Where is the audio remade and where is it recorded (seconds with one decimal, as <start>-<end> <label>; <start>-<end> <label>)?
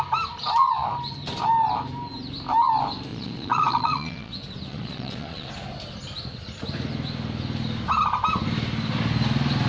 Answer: 0.0-3.1 recorded; 3.1-4.3 remade; 4.3-4.7 recorded; 4.7-5.5 remade; 5.5-9.7 recorded